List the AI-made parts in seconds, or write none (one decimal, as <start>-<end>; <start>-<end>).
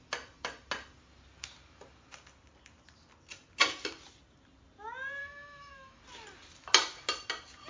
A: 5.2-6.0